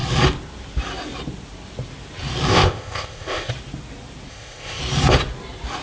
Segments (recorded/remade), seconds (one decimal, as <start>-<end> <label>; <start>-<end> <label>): 0.0-2.5 recorded; 2.5-3.5 remade; 3.5-4.3 recorded; 4.3-4.8 remade; 4.8-5.8 recorded